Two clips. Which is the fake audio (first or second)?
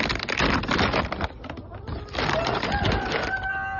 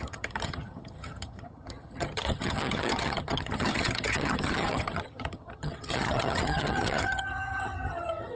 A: second